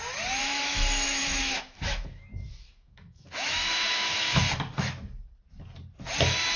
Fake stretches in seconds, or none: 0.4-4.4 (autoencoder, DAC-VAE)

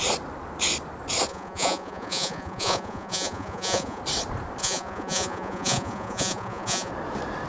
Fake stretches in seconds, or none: 1.3-4.0 (vocoder, Vocos); 4.6-6.9

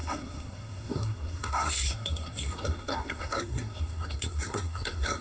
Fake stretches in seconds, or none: 0.0-5.2 (codec, SNAC)

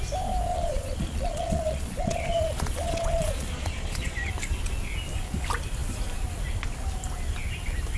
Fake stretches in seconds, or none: 0.5-4.3 (vocoder, Vocos)